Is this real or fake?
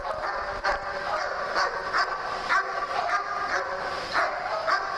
real